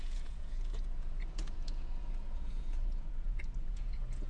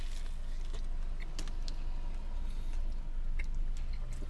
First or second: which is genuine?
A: second